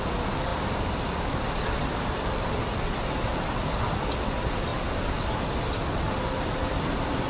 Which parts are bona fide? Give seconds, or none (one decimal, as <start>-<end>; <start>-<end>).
0.0-7.3